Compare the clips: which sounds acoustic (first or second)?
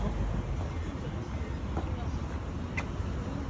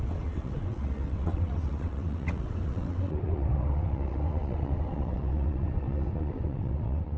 first